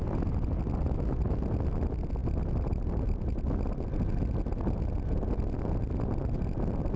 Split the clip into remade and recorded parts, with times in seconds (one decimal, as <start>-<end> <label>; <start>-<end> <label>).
0.0-7.0 recorded

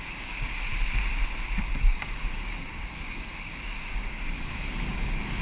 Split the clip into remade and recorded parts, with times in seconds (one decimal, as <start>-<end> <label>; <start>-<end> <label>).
0.0-0.7 remade; 0.7-1.6 recorded; 1.6-5.4 remade